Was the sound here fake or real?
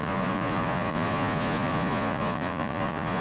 fake